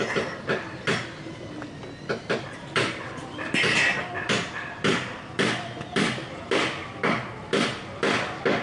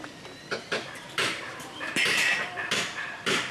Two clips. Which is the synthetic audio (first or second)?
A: second